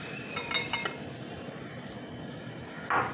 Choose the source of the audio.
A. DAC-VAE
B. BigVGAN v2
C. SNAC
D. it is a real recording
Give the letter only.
D